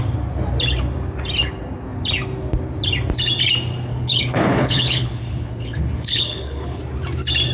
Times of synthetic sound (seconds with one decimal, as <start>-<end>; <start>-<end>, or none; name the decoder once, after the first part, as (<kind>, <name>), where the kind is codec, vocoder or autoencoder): 3.9-6.8 (codec, HILCodec)

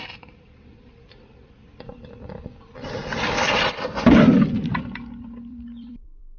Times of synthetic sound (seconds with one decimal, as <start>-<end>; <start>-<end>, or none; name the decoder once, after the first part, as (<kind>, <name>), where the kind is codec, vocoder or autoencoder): 0.0-6.4 (vocoder, BigVGAN v2)

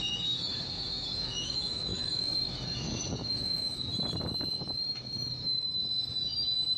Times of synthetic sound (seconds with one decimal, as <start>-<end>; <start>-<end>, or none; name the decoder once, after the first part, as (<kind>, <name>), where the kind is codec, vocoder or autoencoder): 0.0-3.9 (autoencoder, DAC-VAE); 4.9-5.8

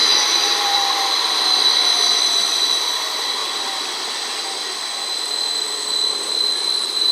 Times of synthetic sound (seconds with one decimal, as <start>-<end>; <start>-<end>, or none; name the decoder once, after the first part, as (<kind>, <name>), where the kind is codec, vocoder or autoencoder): 0.0-3.4 (vocoder, BigVGAN v2)